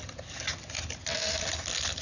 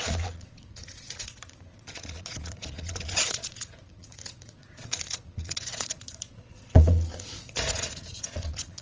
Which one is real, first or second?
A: first